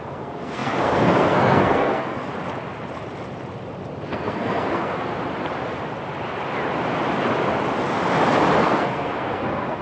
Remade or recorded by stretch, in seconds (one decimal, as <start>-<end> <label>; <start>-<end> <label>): 0.0-2.3 remade; 2.3-4.1 recorded; 4.1-5.1 remade; 5.1-8.6 recorded; 8.6-9.8 remade